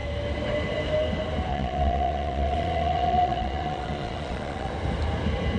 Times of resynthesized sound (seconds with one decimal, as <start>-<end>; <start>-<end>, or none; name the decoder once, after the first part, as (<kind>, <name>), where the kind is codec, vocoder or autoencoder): 1.5-4.7 (vocoder, Vocos)